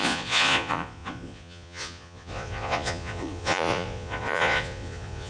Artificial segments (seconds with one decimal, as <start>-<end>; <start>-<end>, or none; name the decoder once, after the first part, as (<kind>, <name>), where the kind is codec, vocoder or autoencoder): 0.0-5.3 (vocoder, Vocos)